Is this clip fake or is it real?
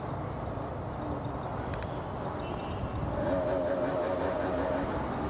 real